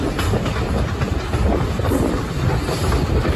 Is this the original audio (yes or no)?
yes